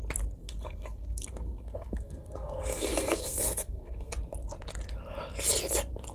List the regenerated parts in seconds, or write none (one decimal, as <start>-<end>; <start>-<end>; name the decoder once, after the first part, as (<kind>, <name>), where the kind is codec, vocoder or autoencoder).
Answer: 0.4-4.1 (codec, SNAC)

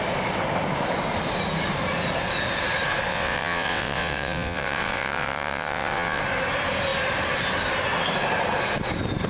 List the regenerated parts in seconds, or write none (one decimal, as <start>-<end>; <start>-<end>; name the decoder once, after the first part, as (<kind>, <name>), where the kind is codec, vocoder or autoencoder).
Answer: 3.1-6.2 (vocoder, WaveNeXt)

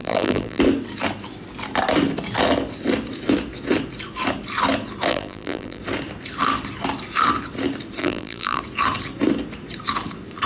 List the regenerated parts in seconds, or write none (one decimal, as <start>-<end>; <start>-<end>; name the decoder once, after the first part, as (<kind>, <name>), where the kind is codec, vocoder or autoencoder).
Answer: 0.0-0.6 (vocoder, BigVGAN v2); 5.1-5.8; 8.0-8.6

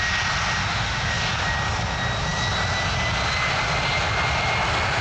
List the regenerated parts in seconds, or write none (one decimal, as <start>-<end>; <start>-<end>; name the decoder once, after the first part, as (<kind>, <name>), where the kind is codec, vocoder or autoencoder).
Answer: 0.6-1.1 (autoencoder, DAC-VAE)

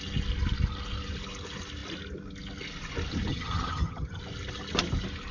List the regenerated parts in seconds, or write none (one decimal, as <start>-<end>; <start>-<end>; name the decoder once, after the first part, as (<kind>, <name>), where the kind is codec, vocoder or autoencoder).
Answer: 3.3-4.2 (vocoder, HiFi-GAN)

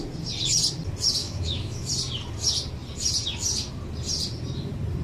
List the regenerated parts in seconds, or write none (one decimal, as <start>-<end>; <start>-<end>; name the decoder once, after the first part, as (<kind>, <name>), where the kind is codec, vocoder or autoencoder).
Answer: 1.2-1.9 (autoencoder, DAC-VAE)

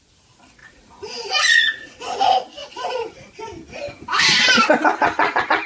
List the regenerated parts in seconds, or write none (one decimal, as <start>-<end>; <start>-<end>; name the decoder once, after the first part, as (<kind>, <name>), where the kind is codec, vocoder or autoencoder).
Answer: 0.6-1.9 (vocoder, Vocos); 2.6-3.1